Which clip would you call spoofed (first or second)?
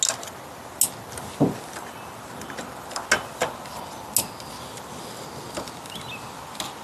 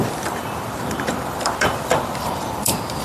second